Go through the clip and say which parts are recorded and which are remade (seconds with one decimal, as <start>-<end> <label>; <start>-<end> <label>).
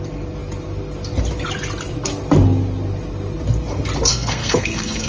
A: 0.0-4.1 recorded; 4.1-5.1 remade